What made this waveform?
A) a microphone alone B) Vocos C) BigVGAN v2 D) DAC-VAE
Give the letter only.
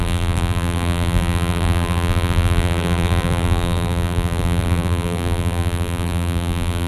C